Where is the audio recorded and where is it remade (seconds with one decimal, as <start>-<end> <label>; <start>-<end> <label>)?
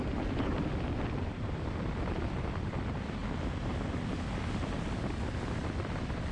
0.0-3.2 remade; 3.2-5.4 recorded; 5.4-6.3 remade